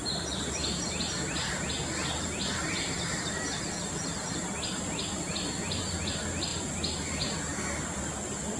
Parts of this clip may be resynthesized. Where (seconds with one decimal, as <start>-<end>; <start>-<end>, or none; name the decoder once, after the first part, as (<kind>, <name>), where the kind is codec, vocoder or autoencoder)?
none

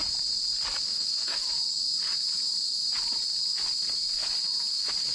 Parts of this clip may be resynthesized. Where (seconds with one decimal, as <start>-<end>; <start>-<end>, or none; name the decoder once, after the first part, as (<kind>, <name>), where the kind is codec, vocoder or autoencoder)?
0.9-1.5 (autoencoder, DAC-VAE)

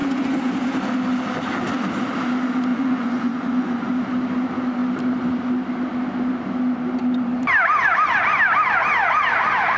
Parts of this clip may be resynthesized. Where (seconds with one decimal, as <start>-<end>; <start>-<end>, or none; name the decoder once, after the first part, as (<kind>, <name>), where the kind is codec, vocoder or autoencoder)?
0.0-0.5 (vocoder, Vocos); 2.7-3.9

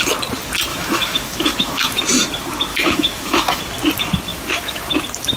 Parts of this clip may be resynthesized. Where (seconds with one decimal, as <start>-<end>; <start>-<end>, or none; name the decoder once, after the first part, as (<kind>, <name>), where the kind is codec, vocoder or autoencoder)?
0.7-2.0 (autoencoder, DAC-VAE); 2.7-3.6; 4.3-4.9

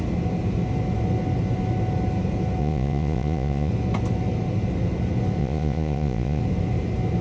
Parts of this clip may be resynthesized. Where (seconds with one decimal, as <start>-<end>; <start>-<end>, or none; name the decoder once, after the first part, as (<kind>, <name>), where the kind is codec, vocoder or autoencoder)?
2.6-3.7 (vocoder, Vocos); 5.4-6.4

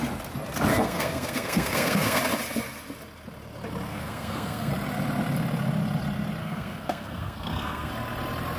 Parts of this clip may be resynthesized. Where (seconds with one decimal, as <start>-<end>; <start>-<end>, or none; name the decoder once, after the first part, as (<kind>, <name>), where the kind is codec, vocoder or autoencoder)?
0.7-2.2 (codec, SNAC); 3.9-4.7; 6.4-7.9

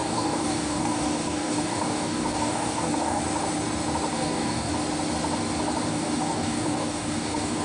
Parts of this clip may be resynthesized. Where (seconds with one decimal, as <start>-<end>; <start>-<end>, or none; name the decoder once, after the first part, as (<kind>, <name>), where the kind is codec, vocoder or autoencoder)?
0.0-3.2 (codec, DAC); 4.1-4.7; 5.9-7.6